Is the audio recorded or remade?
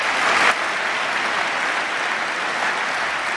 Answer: recorded